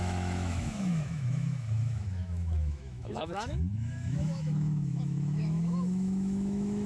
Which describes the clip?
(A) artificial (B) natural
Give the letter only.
A